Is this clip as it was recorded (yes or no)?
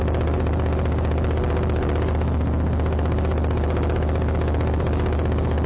yes